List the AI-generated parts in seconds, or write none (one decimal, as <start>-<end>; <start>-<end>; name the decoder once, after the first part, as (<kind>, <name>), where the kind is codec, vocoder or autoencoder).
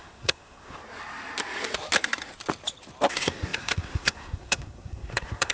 0.0-0.8 (codec, SNAC); 3.1-5.5